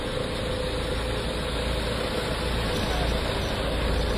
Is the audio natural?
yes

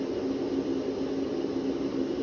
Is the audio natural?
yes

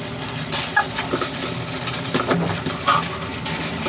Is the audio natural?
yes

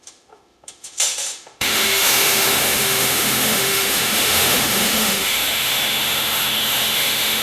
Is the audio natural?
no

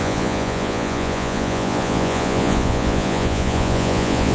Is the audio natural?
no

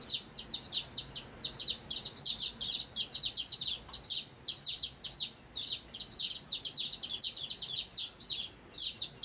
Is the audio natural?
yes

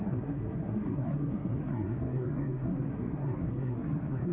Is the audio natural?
no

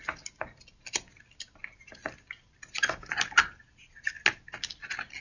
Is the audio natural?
yes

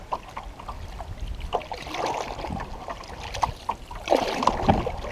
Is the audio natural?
yes